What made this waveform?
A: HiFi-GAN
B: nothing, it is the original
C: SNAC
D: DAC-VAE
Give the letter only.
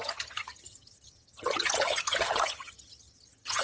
A